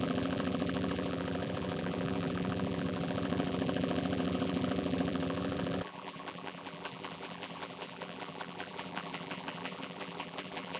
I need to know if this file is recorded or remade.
remade